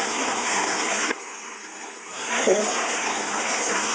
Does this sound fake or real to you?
fake